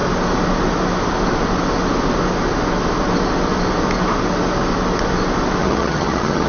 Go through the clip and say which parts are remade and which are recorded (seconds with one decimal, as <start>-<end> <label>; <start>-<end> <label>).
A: 0.0-5.6 recorded; 5.6-6.5 remade